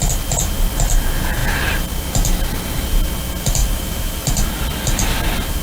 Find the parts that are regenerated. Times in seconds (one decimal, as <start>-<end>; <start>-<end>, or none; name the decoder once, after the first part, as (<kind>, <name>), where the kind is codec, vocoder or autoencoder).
3.6-4.5 (vocoder, BigVGAN v2)